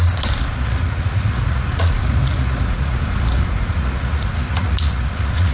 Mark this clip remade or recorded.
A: remade